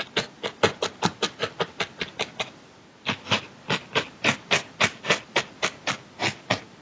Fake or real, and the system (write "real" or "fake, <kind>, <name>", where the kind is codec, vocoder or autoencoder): real